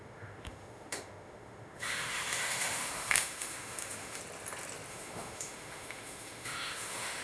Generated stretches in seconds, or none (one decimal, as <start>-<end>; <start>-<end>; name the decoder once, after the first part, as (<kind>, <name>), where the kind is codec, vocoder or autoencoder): 0.0-4.2 (autoencoder, DAC-VAE); 4.9-7.2